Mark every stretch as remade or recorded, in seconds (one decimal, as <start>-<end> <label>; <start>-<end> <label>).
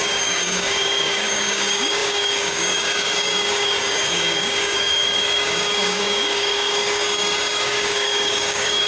0.0-8.9 remade